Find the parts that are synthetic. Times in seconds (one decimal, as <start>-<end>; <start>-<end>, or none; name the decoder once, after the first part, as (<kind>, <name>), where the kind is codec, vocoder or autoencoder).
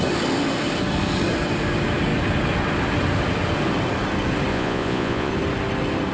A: 4.5-5.3 (vocoder, Vocos)